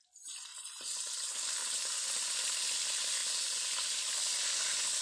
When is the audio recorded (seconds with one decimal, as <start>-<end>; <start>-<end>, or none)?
0.0-0.5; 1.1-1.6; 2.6-5.0